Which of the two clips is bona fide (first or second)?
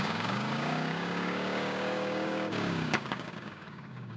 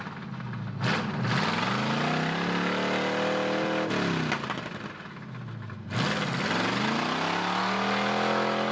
second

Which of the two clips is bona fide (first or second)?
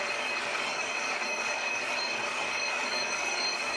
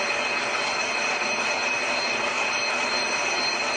second